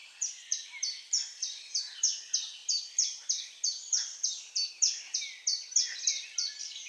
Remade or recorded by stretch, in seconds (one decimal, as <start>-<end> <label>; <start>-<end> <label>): 0.0-1.8 remade; 1.8-2.6 recorded; 2.6-4.7 remade; 4.7-6.9 recorded